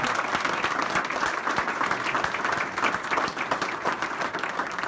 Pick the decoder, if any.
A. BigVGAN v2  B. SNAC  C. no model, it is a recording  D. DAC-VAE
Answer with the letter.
C